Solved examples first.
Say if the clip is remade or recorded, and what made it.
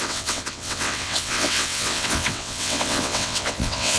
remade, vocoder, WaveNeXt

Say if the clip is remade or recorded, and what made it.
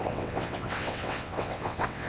remade, vocoder, WaveNeXt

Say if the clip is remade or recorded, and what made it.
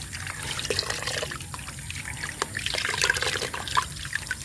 recorded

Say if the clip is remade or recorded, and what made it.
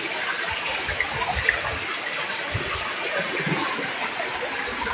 recorded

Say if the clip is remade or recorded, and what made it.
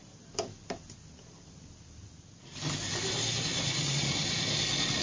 recorded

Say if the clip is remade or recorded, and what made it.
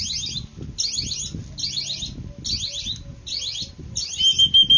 recorded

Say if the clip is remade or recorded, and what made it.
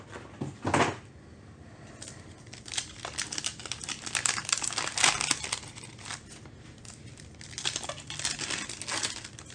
recorded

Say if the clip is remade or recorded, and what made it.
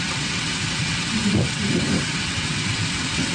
remade, vocoder, WaveNeXt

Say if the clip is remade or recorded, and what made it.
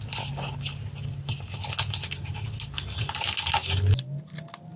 recorded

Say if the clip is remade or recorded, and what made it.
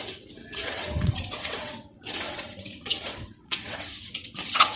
remade, vocoder, WaveNeXt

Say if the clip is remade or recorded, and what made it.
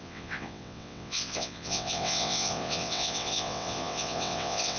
remade, vocoder, WaveNeXt